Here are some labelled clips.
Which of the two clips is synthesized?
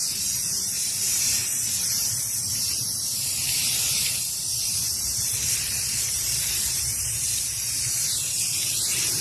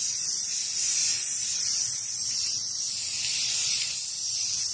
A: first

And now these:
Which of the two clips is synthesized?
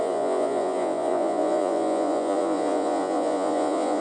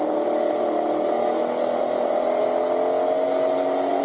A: first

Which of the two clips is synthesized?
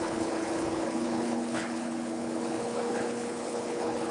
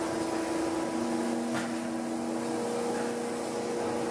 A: first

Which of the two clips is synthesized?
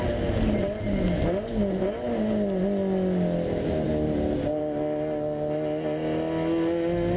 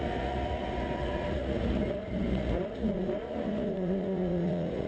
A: second